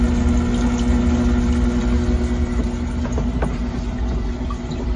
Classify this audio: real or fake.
real